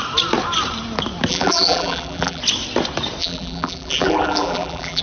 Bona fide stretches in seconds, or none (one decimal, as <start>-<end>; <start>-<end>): 0.0-1.3; 2.4-3.2